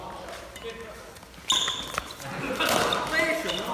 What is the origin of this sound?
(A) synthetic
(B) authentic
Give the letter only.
B